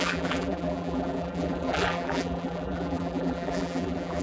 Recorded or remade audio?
remade